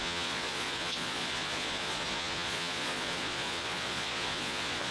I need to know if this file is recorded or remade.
remade